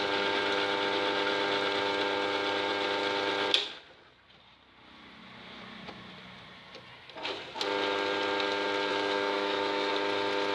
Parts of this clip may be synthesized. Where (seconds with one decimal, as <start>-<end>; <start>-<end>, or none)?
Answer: 8.9-9.9